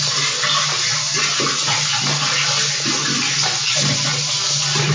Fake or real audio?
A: real